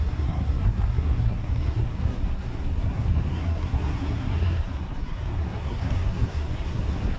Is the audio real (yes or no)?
no